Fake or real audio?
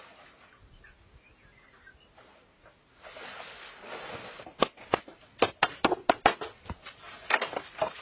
real